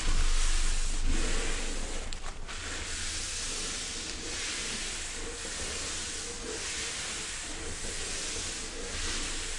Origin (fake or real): real